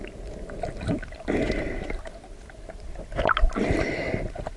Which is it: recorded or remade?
recorded